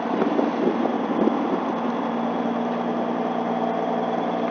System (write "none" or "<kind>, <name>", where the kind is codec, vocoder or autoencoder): none